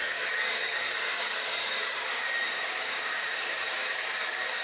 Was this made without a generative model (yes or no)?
no